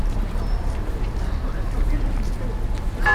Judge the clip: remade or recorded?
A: recorded